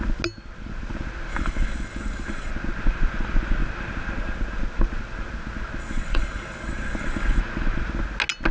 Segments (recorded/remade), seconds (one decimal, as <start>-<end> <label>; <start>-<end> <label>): 0.0-1.3 recorded; 1.3-2.5 remade; 2.5-5.8 recorded; 5.8-7.4 remade; 7.4-8.5 recorded